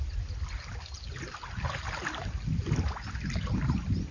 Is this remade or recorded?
recorded